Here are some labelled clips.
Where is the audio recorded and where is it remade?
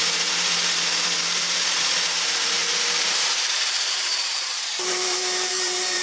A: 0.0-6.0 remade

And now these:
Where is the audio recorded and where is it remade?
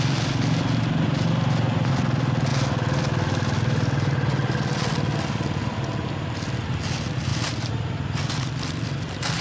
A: 0.0-7.3 recorded; 7.3-9.4 remade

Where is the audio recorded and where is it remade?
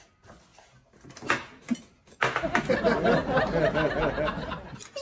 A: 0.0-5.0 recorded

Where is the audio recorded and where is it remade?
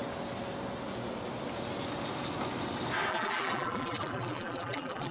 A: 0.0-3.1 recorded; 3.1-5.1 remade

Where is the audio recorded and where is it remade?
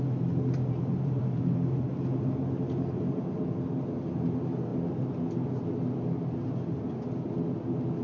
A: 0.0-0.6 recorded; 0.6-3.4 remade; 3.4-8.0 recorded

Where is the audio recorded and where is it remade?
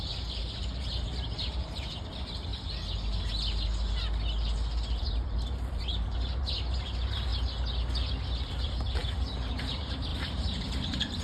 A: 0.0-2.5 remade; 2.5-5.0 recorded; 5.0-7.3 remade; 7.3-8.6 recorded; 8.6-11.2 remade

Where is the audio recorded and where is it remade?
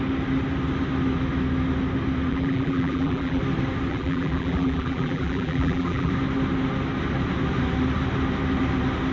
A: 0.0-2.3 recorded; 2.3-3.4 remade; 3.4-3.9 recorded; 3.9-6.1 remade; 6.1-9.1 recorded